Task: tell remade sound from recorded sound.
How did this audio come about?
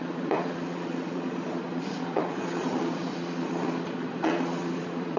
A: remade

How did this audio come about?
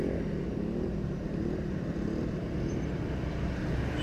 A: recorded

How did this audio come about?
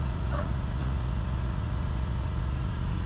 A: remade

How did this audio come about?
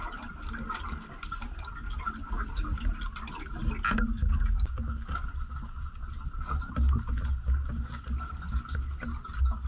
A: recorded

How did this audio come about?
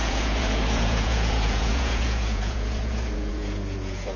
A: remade